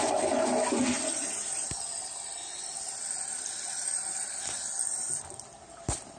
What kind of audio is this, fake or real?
real